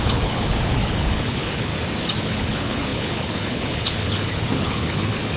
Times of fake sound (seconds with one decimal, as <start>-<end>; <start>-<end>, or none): 0.0-1.7; 2.2-5.4